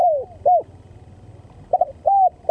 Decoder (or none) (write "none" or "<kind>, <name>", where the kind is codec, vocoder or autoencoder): none